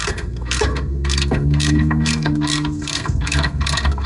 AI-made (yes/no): yes